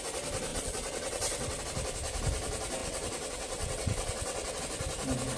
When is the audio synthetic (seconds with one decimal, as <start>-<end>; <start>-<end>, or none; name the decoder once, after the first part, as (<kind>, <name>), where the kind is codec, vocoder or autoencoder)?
0.5-1.6 (vocoder, WaveNeXt); 2.8-4.6